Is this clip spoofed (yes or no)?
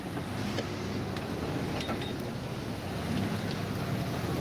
no